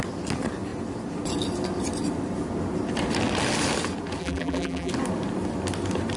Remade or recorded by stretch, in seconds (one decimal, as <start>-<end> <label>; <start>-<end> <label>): 0.0-4.2 recorded; 4.2-4.9 remade; 4.9-6.2 recorded

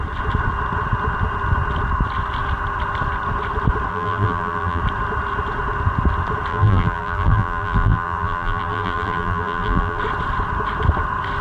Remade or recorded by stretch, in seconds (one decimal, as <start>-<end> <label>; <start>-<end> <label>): 0.0-3.9 recorded; 3.9-4.8 remade; 4.8-6.5 recorded; 6.5-10.0 remade; 10.0-11.4 recorded

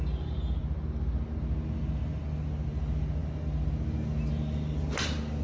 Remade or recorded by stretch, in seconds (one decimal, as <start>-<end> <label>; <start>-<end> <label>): 0.0-5.4 recorded